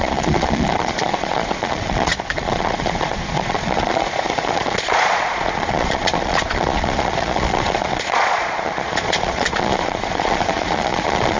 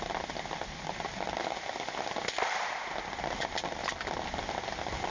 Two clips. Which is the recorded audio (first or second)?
second